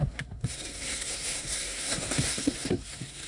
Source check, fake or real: fake